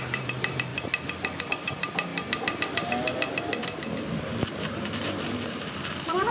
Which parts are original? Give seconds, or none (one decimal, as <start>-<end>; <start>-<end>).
0.7-1.4; 2.1-4.2